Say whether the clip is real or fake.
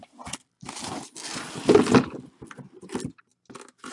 real